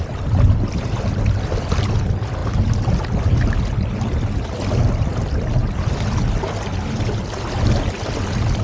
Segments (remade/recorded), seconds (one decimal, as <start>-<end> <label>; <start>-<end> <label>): 0.0-8.6 recorded